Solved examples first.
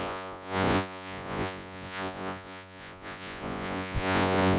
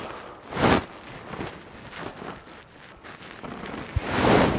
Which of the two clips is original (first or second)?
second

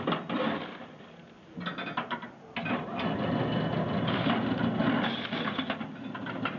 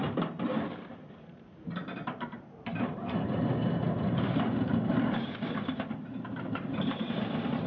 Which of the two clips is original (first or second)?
first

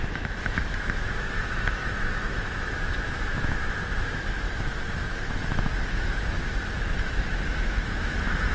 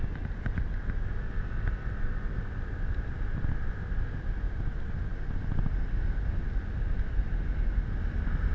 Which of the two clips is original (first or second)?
second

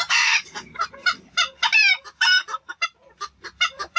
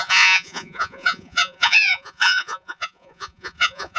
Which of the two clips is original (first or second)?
first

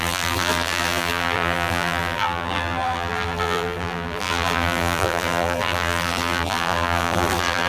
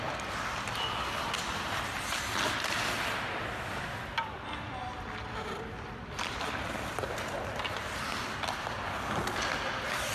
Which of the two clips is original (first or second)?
second